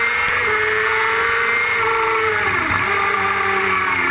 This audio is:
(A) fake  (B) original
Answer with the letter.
A